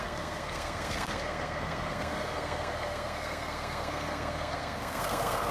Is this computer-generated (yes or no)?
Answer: yes